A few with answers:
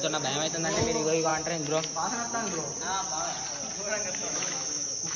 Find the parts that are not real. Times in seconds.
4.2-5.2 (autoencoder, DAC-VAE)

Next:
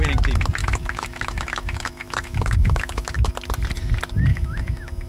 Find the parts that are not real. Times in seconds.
0.6-3.3 (autoencoder, DAC-VAE); 4.3-5.1